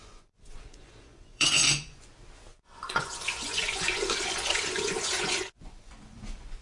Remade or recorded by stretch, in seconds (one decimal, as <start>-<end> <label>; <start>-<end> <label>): 0.0-2.1 remade; 2.1-2.5 recorded; 2.5-6.6 remade